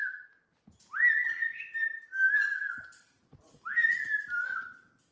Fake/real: real